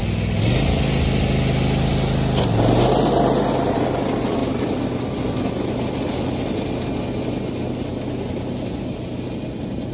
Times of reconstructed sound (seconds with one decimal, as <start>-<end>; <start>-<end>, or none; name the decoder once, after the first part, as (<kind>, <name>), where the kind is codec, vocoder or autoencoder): none